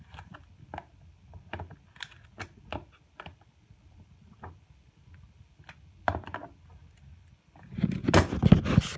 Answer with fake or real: real